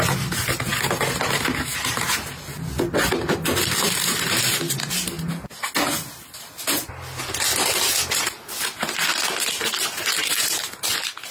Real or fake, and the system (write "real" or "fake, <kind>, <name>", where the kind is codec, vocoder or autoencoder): real